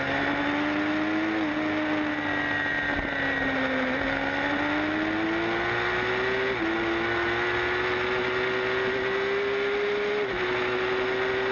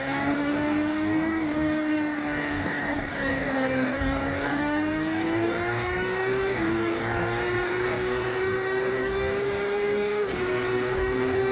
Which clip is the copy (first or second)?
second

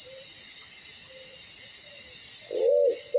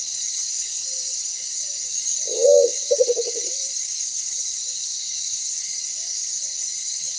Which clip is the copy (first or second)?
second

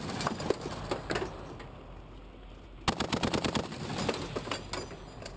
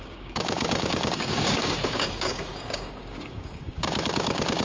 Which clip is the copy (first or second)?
second